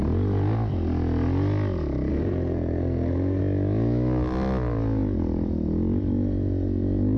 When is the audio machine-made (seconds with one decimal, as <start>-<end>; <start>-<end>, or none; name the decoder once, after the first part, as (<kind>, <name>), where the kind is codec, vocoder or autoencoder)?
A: 2.1-3.4 (codec, SNAC)